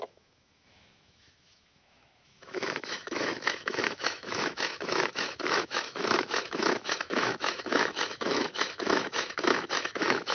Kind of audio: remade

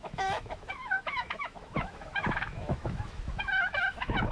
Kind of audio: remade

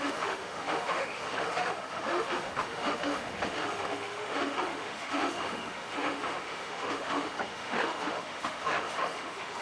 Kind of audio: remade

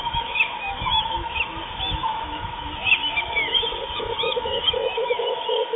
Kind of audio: remade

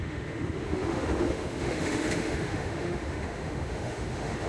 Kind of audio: remade